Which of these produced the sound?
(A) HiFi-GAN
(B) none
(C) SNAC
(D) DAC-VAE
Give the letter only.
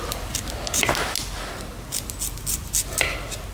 B